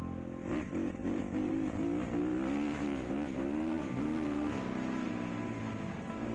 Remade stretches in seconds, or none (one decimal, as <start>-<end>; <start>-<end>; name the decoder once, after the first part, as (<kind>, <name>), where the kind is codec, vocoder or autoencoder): 1.0-1.5 (vocoder, BigVGAN v2)